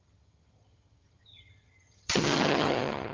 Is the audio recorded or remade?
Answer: remade